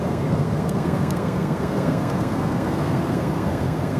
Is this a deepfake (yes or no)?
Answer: yes